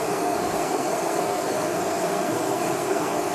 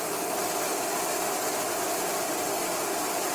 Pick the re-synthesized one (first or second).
first